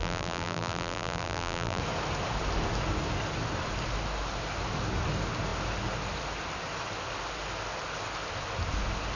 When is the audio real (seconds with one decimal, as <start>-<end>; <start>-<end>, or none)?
1.8-9.2